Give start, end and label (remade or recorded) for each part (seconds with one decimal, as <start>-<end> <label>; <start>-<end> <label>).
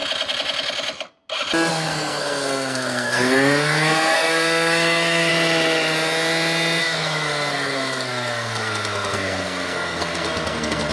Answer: 0.0-1.7 recorded; 1.7-5.3 remade; 5.3-6.8 recorded; 6.8-10.9 remade